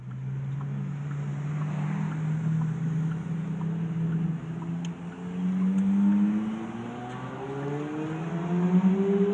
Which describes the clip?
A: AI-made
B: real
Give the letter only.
B